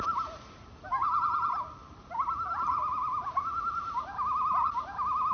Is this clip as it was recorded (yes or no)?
yes